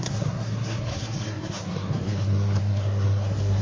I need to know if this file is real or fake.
fake